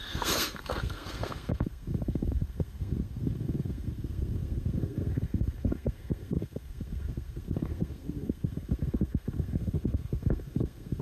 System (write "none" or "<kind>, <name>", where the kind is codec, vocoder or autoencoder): codec, SNAC